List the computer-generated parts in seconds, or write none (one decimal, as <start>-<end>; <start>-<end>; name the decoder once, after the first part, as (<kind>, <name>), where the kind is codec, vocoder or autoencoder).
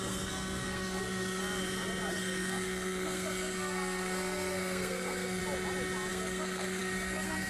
0.0-1.4 (codec, SNAC); 2.1-5.4; 6.1-7.5